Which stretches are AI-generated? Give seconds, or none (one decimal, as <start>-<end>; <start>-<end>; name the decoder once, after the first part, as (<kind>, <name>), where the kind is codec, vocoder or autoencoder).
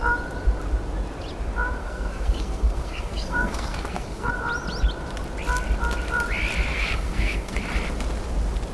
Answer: 1.8-4.3 (codec, SNAC); 6.7-7.6